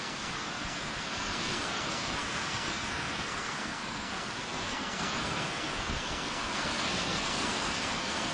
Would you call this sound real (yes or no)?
no